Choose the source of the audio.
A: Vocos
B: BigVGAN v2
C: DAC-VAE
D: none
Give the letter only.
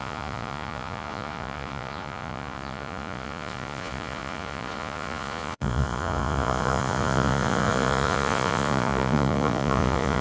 A